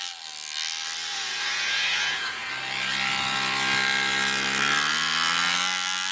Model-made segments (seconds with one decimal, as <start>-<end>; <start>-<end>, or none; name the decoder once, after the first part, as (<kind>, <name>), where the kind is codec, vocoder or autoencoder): 1.1-2.5 (vocoder, Vocos)